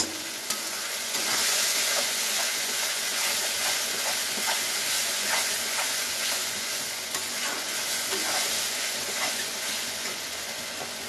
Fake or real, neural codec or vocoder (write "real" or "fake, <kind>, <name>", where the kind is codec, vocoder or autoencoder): fake, vocoder, Vocos